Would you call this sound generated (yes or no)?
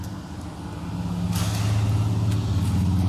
no